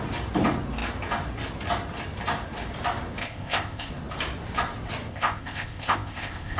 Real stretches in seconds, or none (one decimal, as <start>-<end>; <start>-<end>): 0.0-3.2; 3.9-5.1